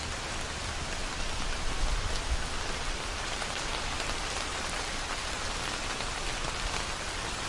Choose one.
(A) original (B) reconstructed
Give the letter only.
A